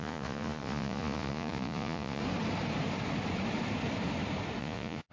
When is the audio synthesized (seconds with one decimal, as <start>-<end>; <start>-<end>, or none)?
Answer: 0.0-2.2; 4.6-5.1